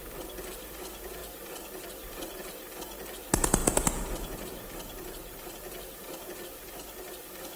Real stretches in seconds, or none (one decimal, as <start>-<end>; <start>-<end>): 0.0-7.6